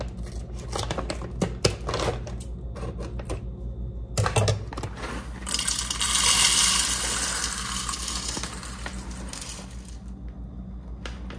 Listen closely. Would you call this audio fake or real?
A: real